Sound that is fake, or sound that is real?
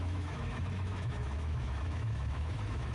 fake